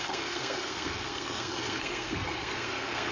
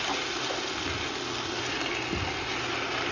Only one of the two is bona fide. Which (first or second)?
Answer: second